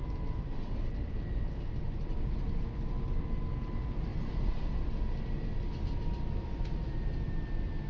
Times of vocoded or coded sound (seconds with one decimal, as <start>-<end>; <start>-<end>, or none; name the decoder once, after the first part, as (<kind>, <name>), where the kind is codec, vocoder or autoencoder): none